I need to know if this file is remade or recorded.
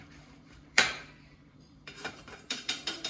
remade